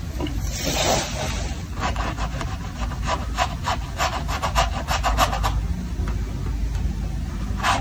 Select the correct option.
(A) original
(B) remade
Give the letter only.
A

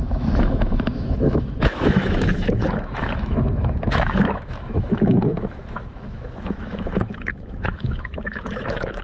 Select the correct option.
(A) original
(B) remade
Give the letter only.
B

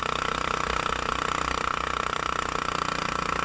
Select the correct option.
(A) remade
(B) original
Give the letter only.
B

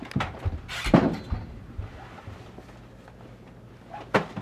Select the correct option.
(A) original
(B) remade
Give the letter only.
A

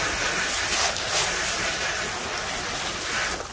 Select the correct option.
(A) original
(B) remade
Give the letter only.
A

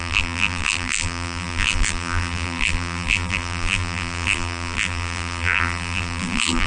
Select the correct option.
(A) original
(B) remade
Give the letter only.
B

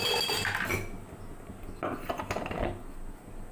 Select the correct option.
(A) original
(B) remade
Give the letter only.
A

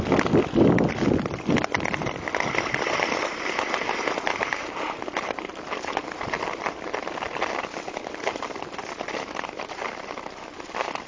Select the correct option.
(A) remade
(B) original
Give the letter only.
B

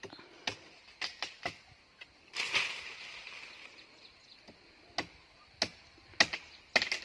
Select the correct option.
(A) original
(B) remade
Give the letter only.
A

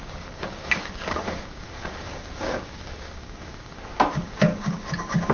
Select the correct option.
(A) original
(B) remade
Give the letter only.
B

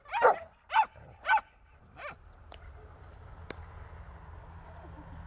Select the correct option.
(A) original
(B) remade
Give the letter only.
A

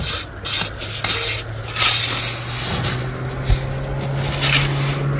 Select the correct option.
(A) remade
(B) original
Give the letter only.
B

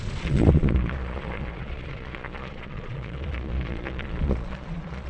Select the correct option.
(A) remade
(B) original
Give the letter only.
A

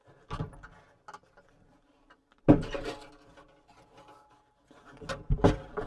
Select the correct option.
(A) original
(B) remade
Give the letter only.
A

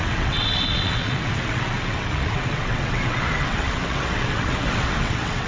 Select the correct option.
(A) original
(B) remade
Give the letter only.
B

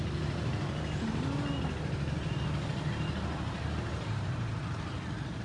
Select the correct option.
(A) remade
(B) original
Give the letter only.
B